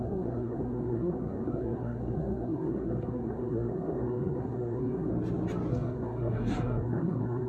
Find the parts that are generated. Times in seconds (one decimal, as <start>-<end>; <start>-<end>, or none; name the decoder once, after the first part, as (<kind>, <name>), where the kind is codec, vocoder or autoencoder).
0.0-5.1 (codec, SNAC); 5.7-7.5